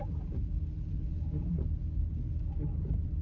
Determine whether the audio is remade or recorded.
recorded